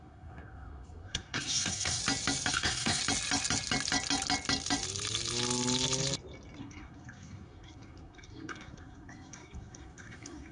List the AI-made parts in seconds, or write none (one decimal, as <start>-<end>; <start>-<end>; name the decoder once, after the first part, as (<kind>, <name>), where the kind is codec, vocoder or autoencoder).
0.0-2.0 (codec, SNAC); 2.5-3.0; 6.6-10.5